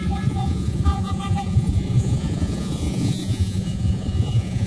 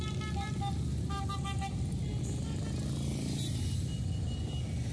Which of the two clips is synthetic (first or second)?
first